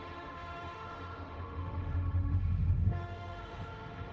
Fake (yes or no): yes